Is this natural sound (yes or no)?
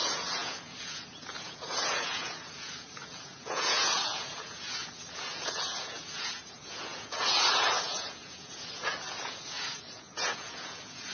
no